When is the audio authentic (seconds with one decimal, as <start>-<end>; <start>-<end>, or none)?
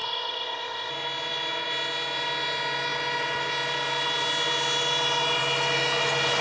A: 0.9-6.4